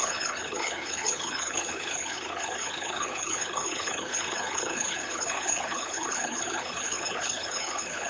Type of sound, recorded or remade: remade